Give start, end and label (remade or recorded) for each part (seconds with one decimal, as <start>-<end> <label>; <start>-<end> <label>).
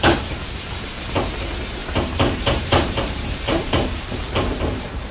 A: 0.0-1.8 recorded; 1.8-5.1 remade